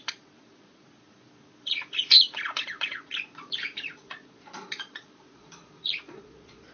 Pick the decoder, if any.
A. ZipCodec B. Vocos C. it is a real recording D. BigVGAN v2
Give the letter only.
B